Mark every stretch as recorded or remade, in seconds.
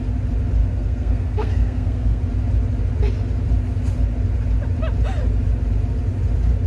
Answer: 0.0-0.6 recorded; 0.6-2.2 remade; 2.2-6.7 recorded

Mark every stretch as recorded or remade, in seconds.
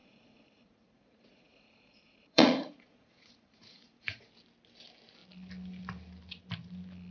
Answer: 0.0-4.3 remade; 4.3-7.1 recorded